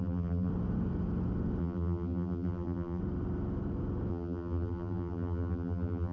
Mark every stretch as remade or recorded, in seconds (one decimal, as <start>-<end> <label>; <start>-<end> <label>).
0.0-0.5 remade; 0.5-1.6 recorded; 1.6-3.0 remade; 3.0-4.1 recorded; 4.1-6.1 remade